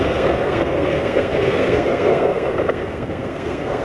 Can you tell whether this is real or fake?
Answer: fake